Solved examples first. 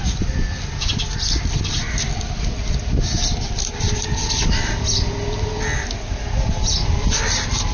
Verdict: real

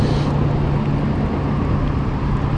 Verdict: real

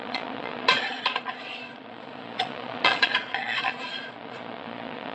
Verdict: fake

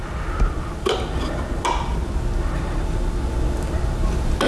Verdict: real